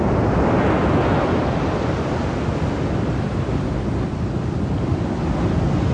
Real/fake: real